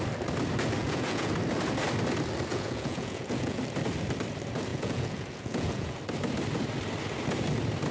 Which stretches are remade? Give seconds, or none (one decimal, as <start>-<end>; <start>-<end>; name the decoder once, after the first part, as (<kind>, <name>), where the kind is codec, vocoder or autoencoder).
0.8-1.3 (vocoder, Vocos); 2.5-3.6; 4.7-6.0